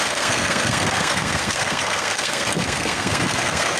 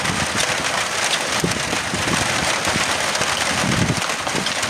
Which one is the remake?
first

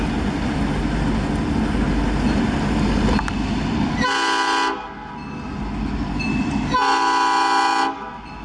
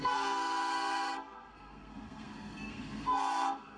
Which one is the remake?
second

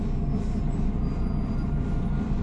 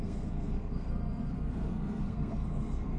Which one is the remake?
second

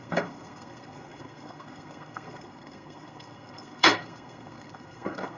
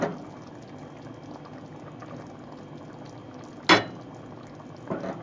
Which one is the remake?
first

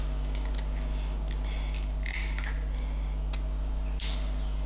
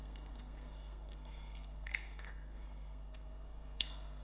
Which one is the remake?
second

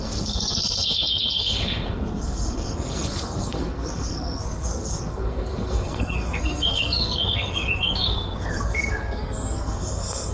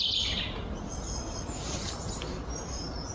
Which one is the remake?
first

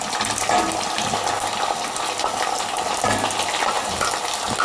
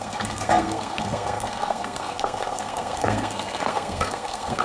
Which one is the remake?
second